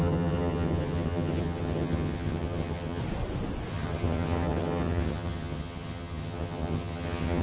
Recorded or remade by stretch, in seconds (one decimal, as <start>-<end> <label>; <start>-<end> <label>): 0.0-3.0 remade; 3.0-3.7 recorded; 3.7-7.4 remade